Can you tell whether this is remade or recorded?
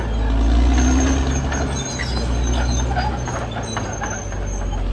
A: recorded